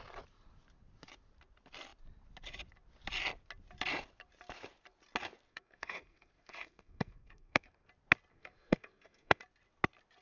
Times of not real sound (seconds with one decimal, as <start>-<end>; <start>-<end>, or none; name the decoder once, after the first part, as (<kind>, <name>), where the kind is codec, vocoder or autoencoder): 5.5-7.9 (codec, SNAC); 8.3-9.4